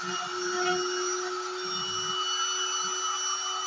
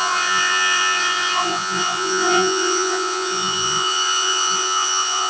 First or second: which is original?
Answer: first